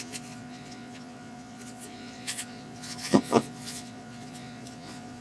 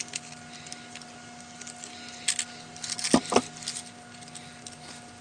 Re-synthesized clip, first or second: first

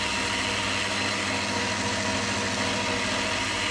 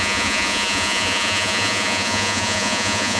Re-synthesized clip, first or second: second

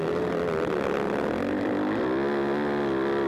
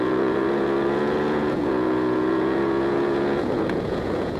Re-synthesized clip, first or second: second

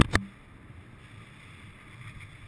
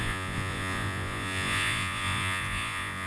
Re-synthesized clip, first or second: second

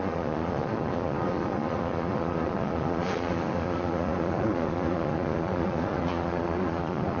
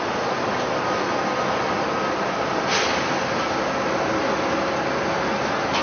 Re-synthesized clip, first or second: first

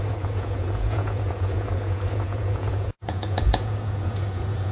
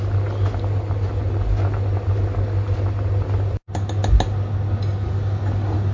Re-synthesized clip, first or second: first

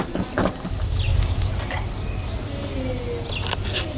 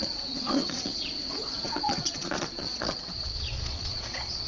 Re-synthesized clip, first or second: second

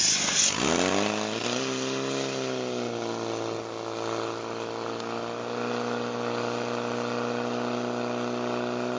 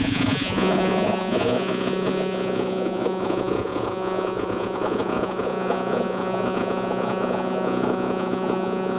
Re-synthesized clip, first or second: second